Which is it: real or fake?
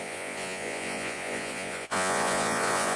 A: fake